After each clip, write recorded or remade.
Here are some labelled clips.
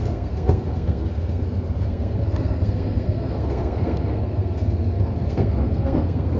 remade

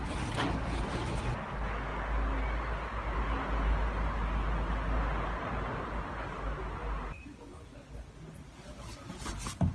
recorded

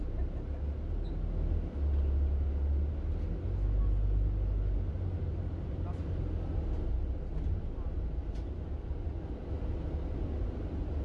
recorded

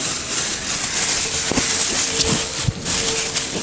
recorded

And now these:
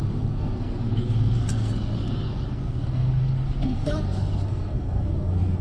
remade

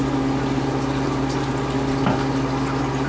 recorded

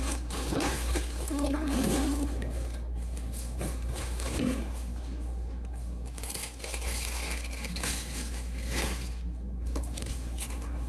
remade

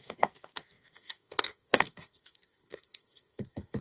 remade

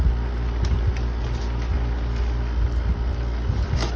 recorded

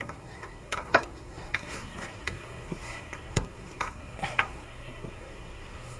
remade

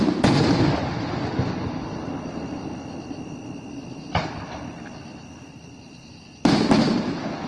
recorded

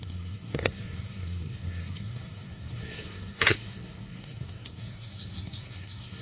remade